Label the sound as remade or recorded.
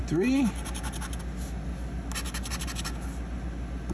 recorded